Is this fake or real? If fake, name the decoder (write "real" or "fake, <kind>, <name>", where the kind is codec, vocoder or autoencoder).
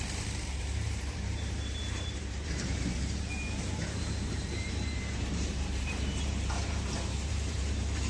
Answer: fake, vocoder, BigVGAN v2